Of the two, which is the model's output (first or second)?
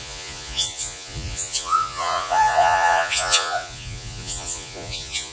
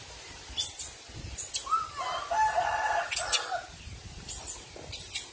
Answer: first